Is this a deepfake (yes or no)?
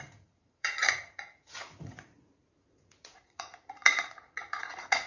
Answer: yes